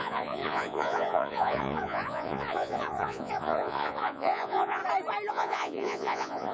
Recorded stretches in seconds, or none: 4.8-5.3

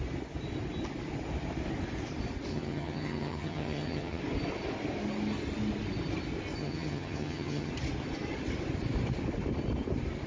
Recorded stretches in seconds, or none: 0.0-2.5; 4.2-6.6; 7.7-10.3

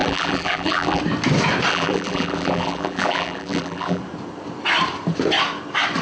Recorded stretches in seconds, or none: 1.0-1.7; 4.0-6.0

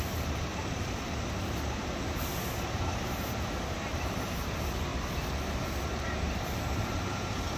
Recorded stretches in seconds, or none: 0.5-3.9; 4.9-5.8